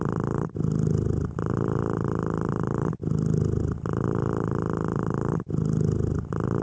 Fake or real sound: real